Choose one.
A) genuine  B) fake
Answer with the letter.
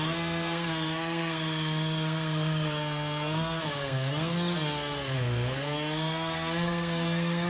B